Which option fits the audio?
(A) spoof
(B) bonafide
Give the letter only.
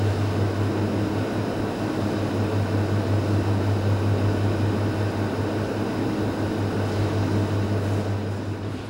B